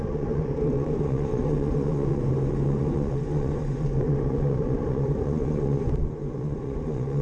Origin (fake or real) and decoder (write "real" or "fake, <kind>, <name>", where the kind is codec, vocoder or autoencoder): fake, vocoder, Vocos